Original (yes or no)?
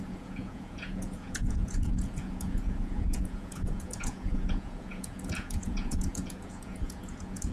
no